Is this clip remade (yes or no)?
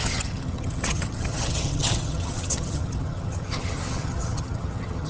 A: yes